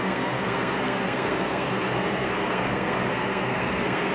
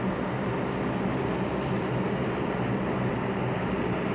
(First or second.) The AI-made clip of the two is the first